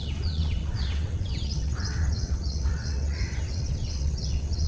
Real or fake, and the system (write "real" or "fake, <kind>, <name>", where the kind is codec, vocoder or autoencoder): fake, vocoder, WaveNeXt